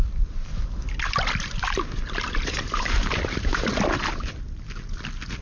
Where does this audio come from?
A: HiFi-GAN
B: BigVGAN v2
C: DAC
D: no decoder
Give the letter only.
D